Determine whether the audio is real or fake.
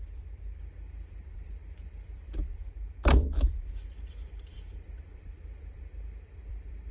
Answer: fake